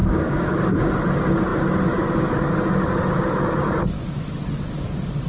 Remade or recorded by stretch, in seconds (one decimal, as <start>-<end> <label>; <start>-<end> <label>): 0.0-0.6 remade; 0.6-5.3 recorded

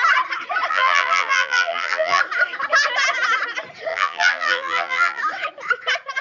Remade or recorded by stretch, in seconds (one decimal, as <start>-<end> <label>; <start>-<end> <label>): 0.0-0.7 recorded; 0.7-2.2 remade; 2.2-3.9 recorded; 3.9-5.2 remade; 5.2-6.2 recorded

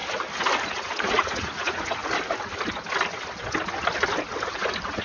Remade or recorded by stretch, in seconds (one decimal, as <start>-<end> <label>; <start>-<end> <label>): 0.0-0.6 recorded; 0.6-2.0 remade; 2.0-5.0 recorded

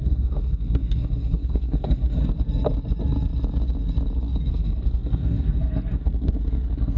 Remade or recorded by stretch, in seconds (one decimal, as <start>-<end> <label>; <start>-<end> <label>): 0.0-2.2 remade; 2.2-4.5 recorded; 4.5-7.0 remade